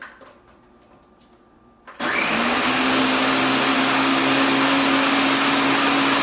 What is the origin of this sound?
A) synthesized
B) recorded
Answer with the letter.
B